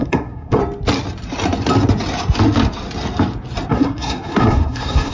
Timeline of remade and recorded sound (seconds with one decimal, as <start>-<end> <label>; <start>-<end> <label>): 0.0-0.6 remade; 0.6-3.7 recorded; 3.7-5.1 remade